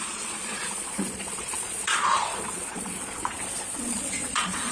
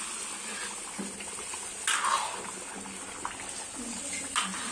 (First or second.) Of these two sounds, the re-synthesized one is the first